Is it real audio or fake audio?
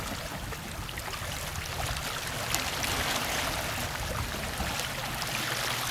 real